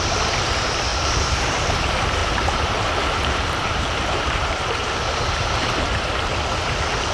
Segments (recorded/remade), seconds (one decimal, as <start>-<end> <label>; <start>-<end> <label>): 0.0-0.9 recorded; 0.9-1.7 remade; 1.7-2.2 recorded; 2.2-5.8 remade; 5.8-7.1 recorded